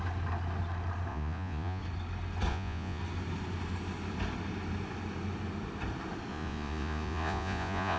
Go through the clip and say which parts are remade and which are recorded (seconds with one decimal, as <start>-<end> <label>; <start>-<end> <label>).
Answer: 0.0-1.1 recorded; 1.1-1.8 remade; 1.8-2.5 recorded; 2.5-3.0 remade; 3.0-6.3 recorded; 6.3-8.0 remade